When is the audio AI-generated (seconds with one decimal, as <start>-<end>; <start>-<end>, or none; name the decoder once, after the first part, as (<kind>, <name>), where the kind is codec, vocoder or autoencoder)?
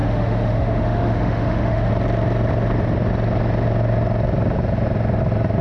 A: 0.0-1.9 (autoencoder, DAC-VAE)